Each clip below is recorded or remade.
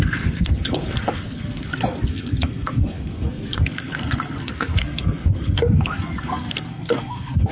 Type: remade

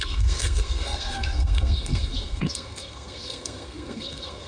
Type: remade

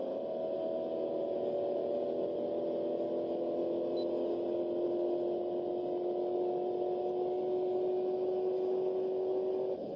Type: recorded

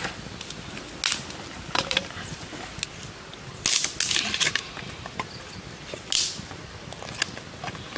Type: recorded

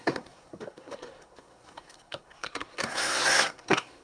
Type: remade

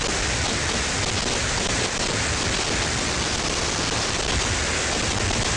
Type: recorded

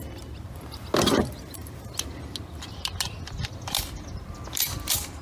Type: recorded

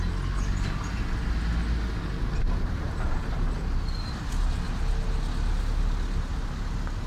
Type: recorded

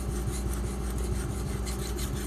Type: recorded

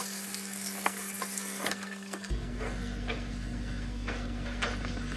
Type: remade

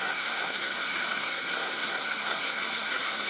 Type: remade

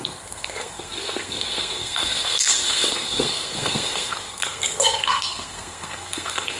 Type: remade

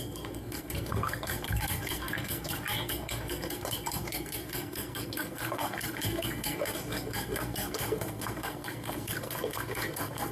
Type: remade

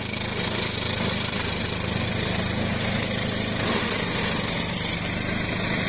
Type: recorded